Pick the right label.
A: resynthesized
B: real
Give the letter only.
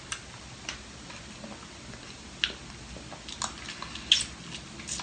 B